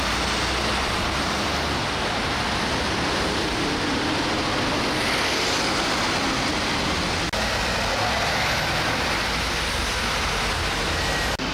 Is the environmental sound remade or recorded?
recorded